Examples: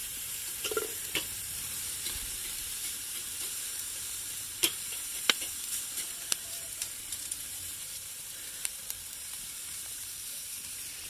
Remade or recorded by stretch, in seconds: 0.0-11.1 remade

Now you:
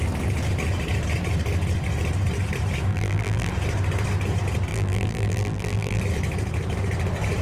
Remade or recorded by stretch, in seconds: 0.0-2.9 recorded; 2.9-3.5 remade; 3.5-4.7 recorded; 4.7-6.0 remade; 6.0-7.4 recorded

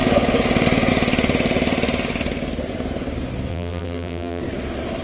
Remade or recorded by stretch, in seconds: 0.0-3.5 recorded; 3.5-4.4 remade; 4.4-5.0 recorded

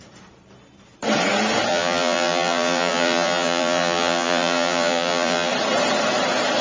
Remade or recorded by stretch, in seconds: 0.0-1.7 recorded; 1.7-5.5 remade; 5.5-6.6 recorded